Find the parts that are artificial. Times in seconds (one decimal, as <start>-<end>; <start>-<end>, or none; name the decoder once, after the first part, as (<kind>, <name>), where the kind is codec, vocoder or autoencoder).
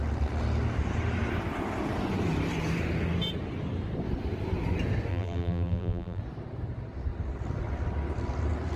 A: 5.1-6.2 (vocoder, BigVGAN v2)